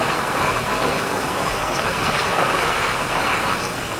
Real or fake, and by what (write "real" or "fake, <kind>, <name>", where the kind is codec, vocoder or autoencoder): fake, codec, SNAC